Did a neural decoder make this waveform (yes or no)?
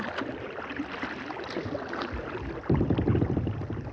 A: no